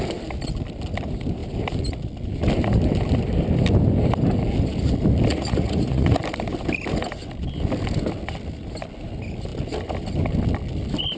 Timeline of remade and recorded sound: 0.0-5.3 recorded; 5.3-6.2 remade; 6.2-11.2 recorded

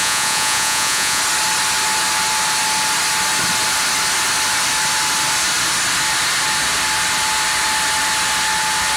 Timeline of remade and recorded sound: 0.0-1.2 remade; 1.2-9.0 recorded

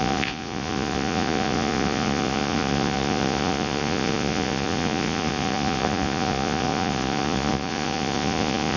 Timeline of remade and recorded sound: 0.0-8.8 remade

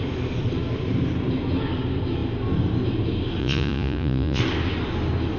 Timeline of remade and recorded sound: 0.0-3.4 recorded; 3.4-4.4 remade; 4.4-5.4 recorded

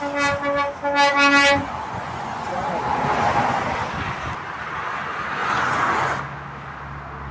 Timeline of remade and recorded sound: 0.0-1.1 recorded; 1.1-2.7 remade; 2.7-5.4 recorded; 5.4-6.2 remade; 6.2-7.3 recorded

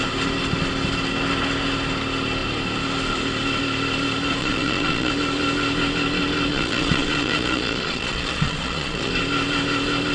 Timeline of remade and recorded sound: 0.0-4.4 recorded; 4.4-5.1 remade; 5.1-6.5 recorded; 6.5-9.1 remade; 9.1-10.1 recorded